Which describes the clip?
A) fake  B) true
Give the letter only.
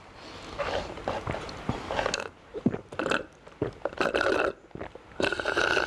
B